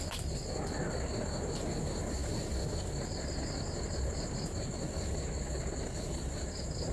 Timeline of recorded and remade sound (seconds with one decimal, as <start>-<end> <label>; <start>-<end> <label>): 0.0-6.9 recorded

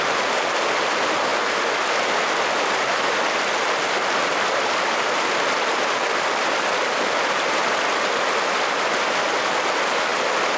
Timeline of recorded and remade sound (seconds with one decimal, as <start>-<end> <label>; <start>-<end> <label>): 0.0-10.6 recorded

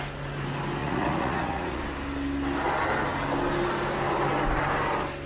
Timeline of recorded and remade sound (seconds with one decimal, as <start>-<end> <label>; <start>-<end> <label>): 0.0-0.8 recorded; 0.8-1.8 remade; 1.8-5.3 recorded

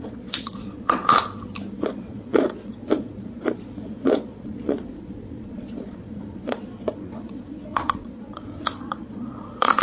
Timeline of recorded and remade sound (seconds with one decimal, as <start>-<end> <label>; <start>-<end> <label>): 0.0-1.0 remade; 1.0-1.8 recorded; 1.8-9.8 remade